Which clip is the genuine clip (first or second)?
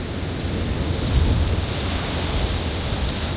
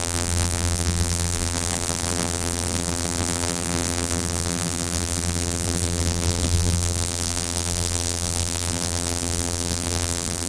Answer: first